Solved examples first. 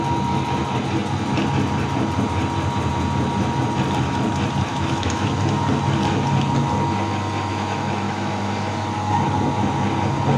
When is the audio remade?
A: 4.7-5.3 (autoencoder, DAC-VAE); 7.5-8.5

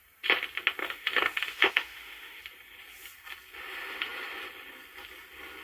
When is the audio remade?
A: 0.8-2.4 (autoencoder, DAC-VAE)